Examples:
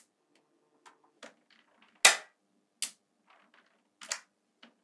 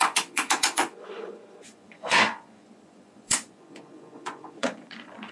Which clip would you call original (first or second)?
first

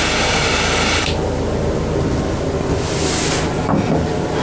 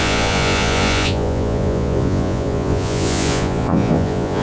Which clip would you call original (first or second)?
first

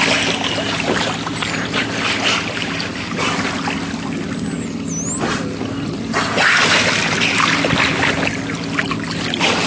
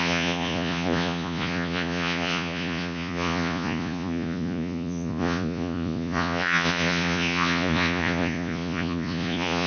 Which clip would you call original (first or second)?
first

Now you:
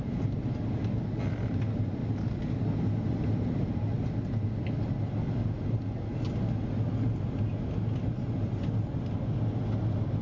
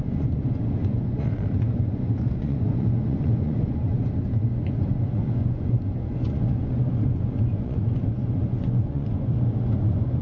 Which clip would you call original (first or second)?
first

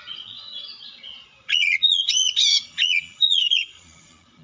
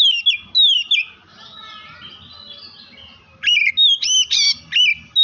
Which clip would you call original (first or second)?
second